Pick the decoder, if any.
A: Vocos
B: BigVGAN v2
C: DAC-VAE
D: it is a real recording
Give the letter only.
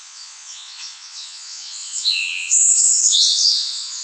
A